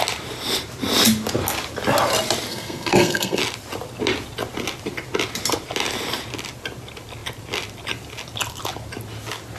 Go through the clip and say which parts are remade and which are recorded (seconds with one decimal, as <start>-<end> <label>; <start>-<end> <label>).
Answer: 0.0-2.5 recorded; 2.5-3.4 remade; 3.4-9.6 recorded